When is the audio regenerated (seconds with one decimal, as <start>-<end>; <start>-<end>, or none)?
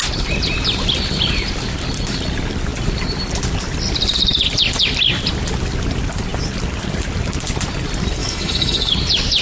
8.2-8.9